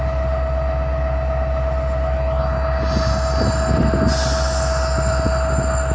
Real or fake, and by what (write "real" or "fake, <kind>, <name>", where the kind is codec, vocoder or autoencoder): real